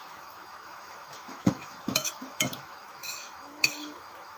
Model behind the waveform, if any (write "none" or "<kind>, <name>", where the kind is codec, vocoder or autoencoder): autoencoder, DAC-VAE